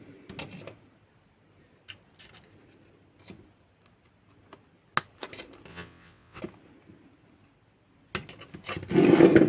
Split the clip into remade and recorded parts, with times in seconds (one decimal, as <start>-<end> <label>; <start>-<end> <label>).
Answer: 0.0-5.7 recorded; 5.7-6.4 remade; 6.4-9.5 recorded